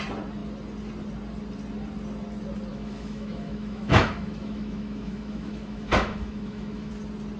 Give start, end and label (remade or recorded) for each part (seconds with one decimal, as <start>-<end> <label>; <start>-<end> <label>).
0.0-2.7 recorded; 2.7-6.9 remade; 6.9-7.4 recorded

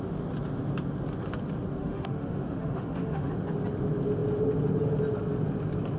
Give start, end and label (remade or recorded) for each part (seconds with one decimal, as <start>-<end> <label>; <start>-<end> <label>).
0.0-1.8 recorded; 1.8-3.3 remade; 3.3-6.0 recorded

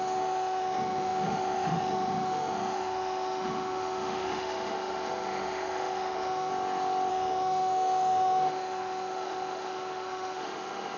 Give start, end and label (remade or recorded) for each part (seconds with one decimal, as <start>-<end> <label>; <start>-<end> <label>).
0.0-6.5 remade; 6.5-7.1 recorded; 7.1-11.0 remade

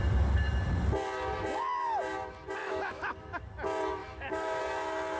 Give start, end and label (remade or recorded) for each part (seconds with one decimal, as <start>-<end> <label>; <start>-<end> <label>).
0.0-2.6 recorded; 2.6-3.5 remade; 3.5-4.0 recorded; 4.0-4.6 remade; 4.6-5.2 recorded

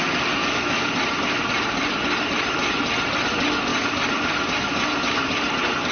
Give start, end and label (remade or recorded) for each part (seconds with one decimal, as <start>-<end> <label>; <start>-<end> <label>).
0.0-0.4 recorded; 0.4-0.9 remade; 0.9-5.9 recorded

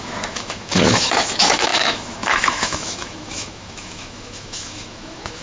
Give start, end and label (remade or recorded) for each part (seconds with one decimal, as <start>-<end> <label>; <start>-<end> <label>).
0.0-5.4 remade